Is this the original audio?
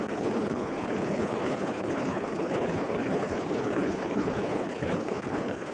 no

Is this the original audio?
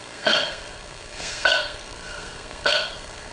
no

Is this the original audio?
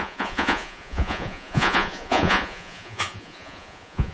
no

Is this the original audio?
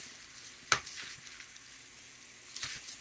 yes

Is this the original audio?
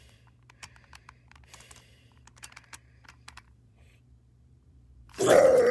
no